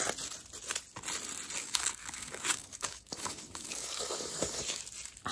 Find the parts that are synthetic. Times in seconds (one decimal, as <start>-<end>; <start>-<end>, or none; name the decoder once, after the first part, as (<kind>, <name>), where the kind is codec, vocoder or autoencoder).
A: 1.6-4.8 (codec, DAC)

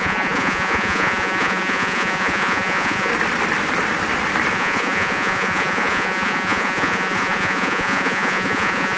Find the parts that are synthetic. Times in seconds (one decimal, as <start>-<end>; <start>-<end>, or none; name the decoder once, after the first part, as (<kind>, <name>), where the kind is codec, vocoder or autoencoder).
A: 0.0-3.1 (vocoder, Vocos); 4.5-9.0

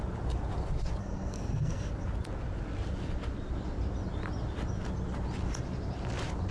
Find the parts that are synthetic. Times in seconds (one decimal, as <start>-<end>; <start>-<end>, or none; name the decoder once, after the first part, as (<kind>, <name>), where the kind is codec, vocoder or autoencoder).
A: 1.0-1.9 (codec, SNAC)

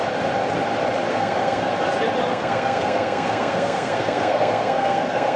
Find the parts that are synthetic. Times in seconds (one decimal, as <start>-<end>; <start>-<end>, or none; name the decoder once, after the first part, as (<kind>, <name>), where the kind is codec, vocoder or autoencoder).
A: 1.1-1.7 (codec, SNAC); 2.3-5.4

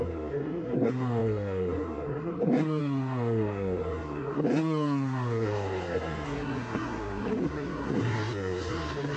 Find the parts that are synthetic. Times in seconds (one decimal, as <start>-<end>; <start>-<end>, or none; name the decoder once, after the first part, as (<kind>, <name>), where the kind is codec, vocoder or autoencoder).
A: 0.0-9.2 (codec, SNAC)

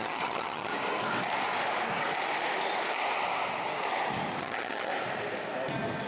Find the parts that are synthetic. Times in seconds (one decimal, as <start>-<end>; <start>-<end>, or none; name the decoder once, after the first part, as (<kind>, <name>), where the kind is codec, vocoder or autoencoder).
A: 0.0-0.7 (vocoder, HiFi-GAN); 4.4-4.9

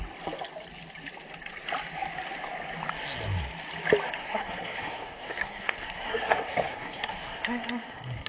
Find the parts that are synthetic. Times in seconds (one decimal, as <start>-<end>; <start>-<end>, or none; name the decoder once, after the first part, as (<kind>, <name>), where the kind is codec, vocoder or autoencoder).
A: 4.2-8.3 (codec, SNAC)